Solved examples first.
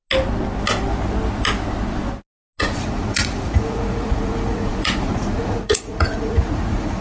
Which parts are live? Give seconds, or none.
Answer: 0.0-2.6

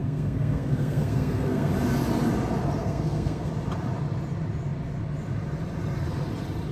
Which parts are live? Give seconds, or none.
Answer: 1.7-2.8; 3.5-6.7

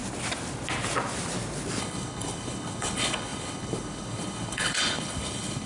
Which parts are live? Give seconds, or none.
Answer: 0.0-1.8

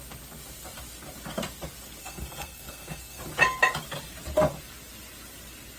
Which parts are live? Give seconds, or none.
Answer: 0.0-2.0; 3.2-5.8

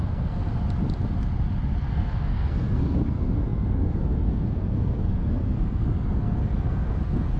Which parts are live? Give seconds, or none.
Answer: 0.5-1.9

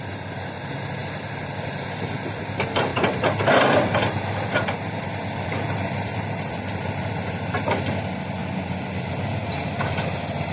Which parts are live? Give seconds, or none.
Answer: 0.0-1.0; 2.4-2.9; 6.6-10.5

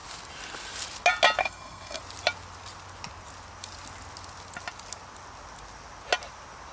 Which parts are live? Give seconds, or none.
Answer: 0.0-1.4; 2.0-6.7